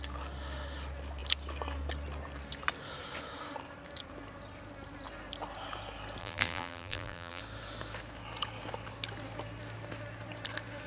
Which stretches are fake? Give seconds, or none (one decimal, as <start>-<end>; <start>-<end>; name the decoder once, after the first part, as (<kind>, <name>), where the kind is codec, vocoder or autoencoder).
6.2-7.4 (vocoder, BigVGAN v2)